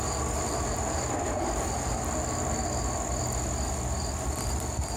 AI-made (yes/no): no